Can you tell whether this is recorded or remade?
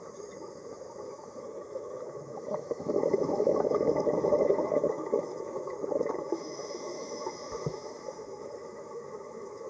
remade